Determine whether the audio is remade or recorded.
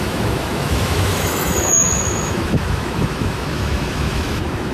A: remade